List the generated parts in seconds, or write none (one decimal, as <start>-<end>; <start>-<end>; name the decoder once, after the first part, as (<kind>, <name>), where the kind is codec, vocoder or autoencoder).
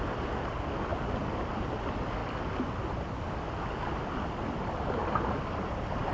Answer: none